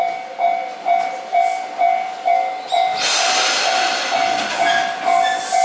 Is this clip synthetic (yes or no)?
no